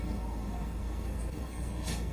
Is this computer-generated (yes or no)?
yes